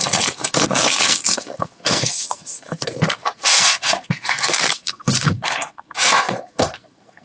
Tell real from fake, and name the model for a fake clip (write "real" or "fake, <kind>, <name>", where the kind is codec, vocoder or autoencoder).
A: fake, codec, SNAC